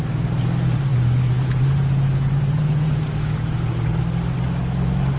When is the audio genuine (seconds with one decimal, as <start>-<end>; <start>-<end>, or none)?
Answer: 0.0-0.9; 4.0-5.2

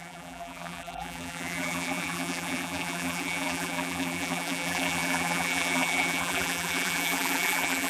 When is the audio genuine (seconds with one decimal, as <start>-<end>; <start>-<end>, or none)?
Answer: none

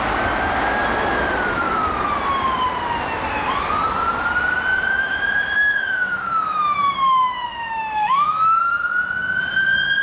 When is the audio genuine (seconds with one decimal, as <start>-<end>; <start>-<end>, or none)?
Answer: 0.0-4.7; 8.6-10.0

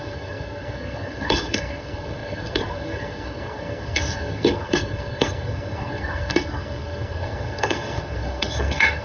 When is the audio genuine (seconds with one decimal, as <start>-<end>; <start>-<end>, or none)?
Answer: none

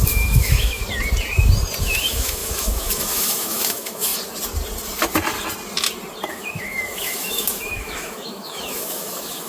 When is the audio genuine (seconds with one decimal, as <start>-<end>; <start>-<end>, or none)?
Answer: 0.8-1.8; 4.1-6.3